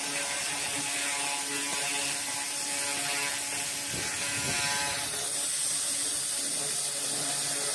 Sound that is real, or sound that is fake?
real